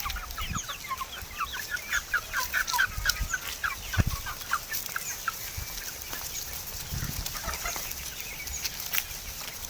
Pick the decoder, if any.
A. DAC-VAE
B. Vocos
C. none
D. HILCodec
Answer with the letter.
C